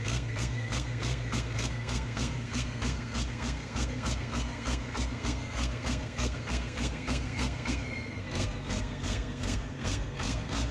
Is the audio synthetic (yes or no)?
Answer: yes